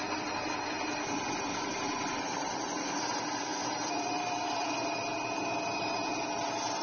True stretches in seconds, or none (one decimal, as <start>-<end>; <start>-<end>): 0.0-6.8